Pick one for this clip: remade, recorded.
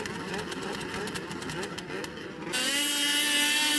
recorded